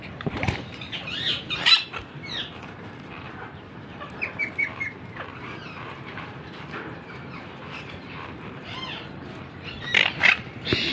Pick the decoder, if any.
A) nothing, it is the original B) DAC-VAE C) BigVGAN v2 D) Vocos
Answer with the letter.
C